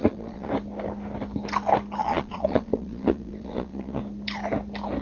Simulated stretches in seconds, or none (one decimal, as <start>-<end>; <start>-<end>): 0.0-0.5; 2.0-4.0